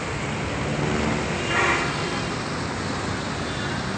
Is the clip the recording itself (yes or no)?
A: yes